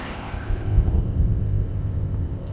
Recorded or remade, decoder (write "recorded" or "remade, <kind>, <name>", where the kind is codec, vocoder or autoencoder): remade, codec, ZipCodec